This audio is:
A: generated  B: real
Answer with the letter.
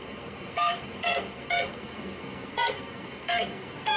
A